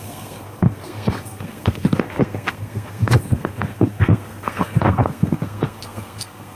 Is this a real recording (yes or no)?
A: no